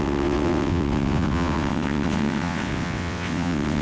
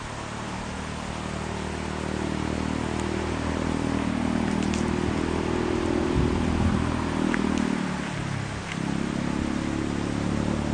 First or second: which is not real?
first